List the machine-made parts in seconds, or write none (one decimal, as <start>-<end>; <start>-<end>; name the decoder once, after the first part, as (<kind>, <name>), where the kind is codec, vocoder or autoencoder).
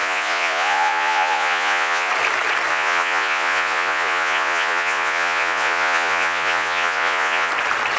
0.0-2.1 (vocoder, Vocos); 2.7-7.5